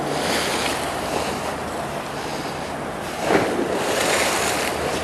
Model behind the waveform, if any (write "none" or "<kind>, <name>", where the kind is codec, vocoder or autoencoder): none